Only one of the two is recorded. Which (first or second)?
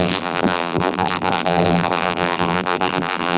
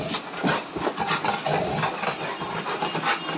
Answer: second